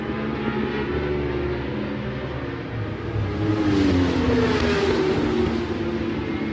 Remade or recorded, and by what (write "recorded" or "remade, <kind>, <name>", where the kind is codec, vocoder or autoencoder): recorded